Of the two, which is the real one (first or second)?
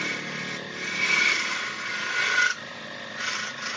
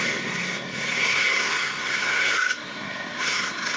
first